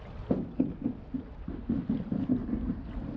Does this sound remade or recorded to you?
recorded